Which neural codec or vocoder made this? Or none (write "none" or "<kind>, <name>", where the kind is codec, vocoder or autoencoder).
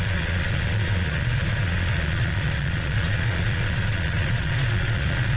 vocoder, Vocos